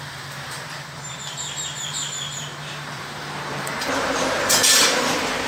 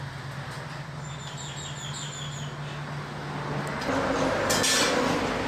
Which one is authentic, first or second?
second